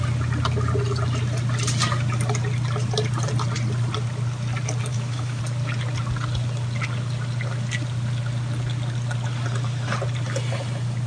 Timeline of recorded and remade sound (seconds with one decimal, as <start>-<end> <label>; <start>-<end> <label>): 0.0-4.9 recorded; 4.9-5.4 remade; 5.4-11.1 recorded